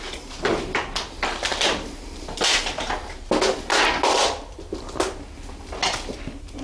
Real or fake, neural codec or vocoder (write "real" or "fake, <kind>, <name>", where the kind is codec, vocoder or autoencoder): real